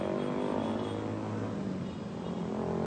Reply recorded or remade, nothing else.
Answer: recorded